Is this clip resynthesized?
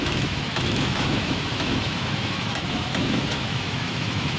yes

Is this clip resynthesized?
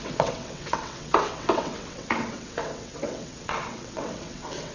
yes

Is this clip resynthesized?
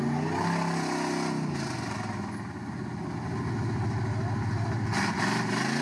no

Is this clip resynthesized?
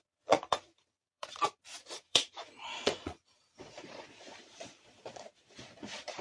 yes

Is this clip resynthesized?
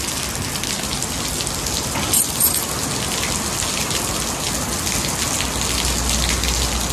no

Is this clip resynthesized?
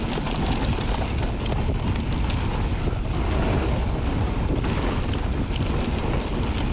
no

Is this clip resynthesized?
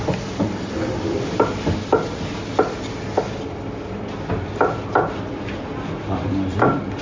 no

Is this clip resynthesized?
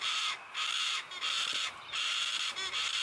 no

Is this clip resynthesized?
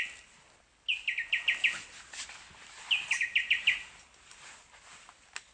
no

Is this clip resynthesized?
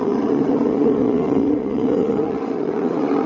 yes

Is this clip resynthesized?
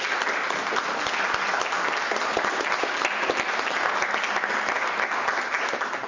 no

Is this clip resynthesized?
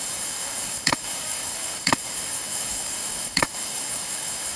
yes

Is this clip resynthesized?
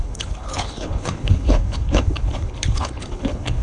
yes